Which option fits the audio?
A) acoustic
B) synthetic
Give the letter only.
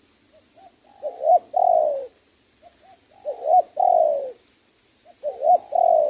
A